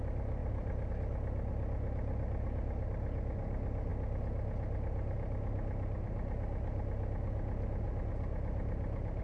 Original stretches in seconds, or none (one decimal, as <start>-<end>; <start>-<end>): 0.0-0.4; 0.9-9.2